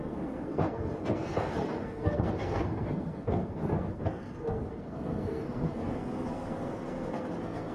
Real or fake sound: fake